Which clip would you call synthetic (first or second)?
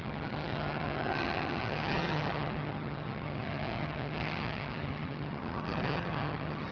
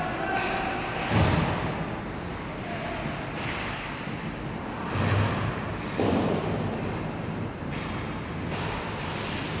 first